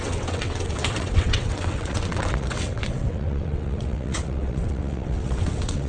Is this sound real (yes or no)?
no